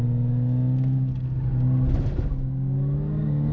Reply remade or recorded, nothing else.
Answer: recorded